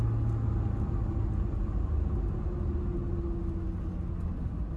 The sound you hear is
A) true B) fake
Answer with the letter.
A